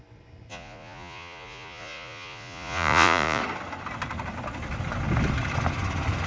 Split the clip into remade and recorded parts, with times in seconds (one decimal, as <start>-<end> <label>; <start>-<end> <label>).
0.0-0.5 recorded; 0.5-3.4 remade; 3.4-6.3 recorded